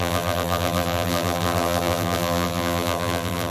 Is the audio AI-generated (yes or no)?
yes